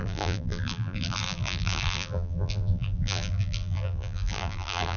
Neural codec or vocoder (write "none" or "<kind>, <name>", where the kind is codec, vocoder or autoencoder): vocoder, BigVGAN v2